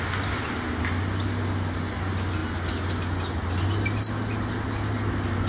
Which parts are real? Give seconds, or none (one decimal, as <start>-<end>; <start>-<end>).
0.0-5.5